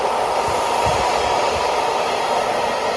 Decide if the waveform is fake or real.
real